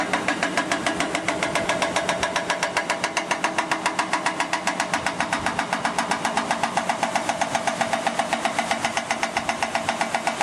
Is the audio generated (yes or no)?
no